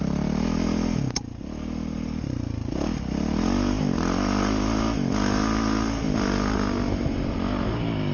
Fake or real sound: real